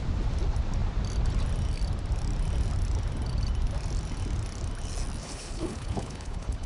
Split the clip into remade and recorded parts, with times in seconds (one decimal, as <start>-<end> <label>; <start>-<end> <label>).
0.0-5.2 recorded; 5.2-6.7 remade